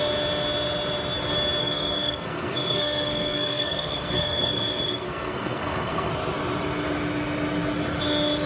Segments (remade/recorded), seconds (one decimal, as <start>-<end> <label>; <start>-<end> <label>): 0.0-1.6 recorded; 1.6-6.1 remade; 6.1-8.5 recorded